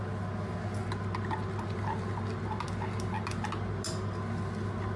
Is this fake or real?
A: real